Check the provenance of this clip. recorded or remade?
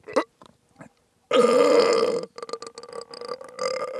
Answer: recorded